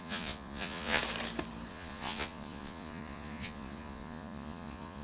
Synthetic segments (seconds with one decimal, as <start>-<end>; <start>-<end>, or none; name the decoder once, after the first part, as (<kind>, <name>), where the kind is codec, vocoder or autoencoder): 0.0-1.0 (vocoder, Vocos); 1.7-5.0

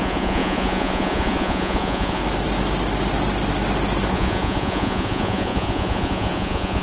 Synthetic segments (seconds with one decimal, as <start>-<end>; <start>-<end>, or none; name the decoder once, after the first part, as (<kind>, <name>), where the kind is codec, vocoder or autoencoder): 0.0-2.2 (vocoder, Vocos); 4.1-6.8